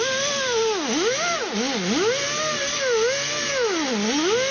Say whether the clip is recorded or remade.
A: recorded